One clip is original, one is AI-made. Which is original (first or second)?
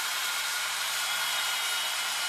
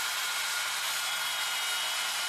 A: second